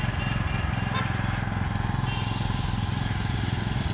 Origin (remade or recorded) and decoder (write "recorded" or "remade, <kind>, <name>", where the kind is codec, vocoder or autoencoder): recorded